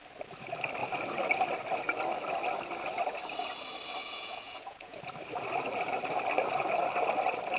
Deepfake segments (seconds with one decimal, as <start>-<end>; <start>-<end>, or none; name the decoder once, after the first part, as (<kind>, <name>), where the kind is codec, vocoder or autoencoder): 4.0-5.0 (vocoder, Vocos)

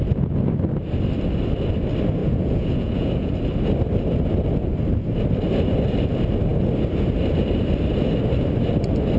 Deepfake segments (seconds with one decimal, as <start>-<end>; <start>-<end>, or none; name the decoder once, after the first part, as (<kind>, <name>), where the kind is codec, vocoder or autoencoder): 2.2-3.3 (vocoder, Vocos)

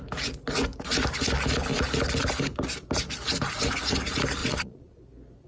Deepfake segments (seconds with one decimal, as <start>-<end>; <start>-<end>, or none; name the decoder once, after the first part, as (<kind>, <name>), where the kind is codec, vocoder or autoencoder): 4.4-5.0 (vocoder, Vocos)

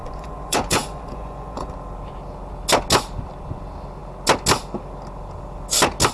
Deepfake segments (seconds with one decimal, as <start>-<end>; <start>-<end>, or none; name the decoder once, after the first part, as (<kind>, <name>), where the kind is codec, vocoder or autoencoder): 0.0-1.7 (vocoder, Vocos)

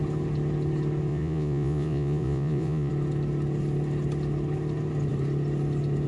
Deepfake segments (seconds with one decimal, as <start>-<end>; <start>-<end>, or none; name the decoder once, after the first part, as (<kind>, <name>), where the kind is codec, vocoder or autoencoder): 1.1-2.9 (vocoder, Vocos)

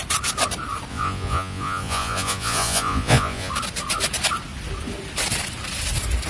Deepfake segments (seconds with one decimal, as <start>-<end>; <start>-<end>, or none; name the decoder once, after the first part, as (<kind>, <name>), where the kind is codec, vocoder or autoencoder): 0.9-3.5 (vocoder, Vocos)

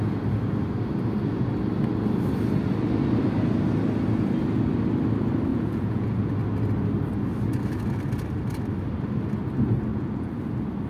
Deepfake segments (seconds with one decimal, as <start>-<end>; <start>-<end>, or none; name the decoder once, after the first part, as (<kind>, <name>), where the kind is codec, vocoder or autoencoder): 5.5-6.3 (vocoder, Vocos); 9.9-10.4

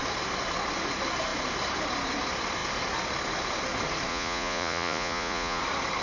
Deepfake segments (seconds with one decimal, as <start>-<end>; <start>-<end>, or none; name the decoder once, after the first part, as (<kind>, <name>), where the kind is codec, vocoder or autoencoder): 4.1-5.6 (vocoder, Vocos)